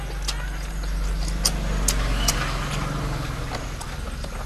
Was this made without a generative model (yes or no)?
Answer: yes